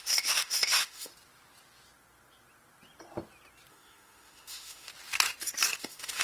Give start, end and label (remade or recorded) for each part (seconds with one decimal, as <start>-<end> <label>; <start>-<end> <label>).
0.0-1.1 remade; 1.1-3.7 recorded; 3.7-4.9 remade; 4.9-5.8 recorded; 5.8-6.2 remade